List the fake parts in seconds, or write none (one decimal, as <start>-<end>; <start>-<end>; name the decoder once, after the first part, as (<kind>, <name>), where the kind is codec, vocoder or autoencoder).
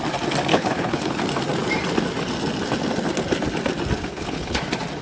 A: 0.5-1.2 (codec, HILCodec); 4.1-4.6